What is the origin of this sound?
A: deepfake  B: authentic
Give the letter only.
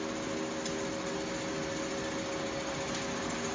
B